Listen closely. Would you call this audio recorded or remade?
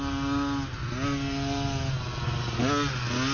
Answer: recorded